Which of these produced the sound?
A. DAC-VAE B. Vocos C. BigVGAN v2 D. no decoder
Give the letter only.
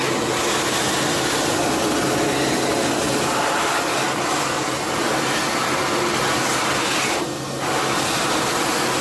D